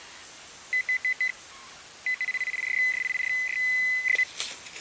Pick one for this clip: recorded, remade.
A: recorded